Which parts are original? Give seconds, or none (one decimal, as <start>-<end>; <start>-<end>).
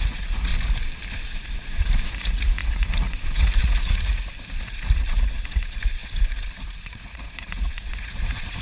0.5-1.1